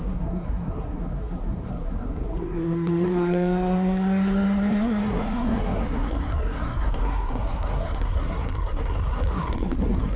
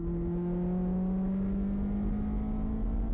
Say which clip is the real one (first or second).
second